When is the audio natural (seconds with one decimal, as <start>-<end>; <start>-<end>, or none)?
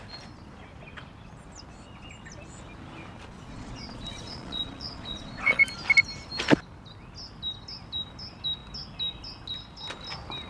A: 0.0-3.5; 5.6-10.5